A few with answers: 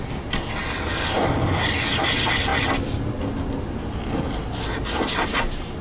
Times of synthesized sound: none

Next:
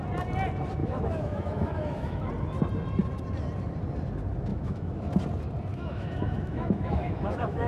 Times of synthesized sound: 0.8-2.3 (autoencoder, DAC-VAE); 4.5-5.1; 5.7-7.7

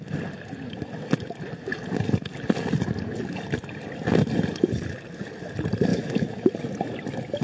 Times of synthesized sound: 5.9-6.5 (autoencoder, DAC-VAE)

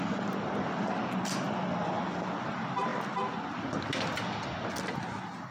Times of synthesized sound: none

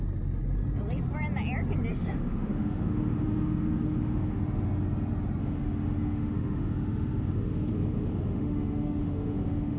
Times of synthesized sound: 1.9-4.4 (autoencoder, DAC-VAE); 5.4-9.8

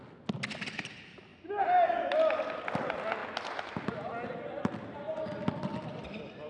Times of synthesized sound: none